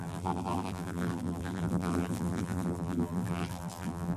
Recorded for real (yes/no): no